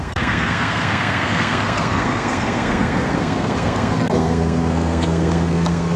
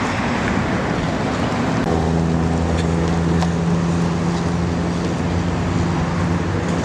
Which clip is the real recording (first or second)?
second